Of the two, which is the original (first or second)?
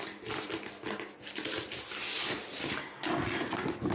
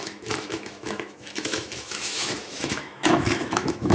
first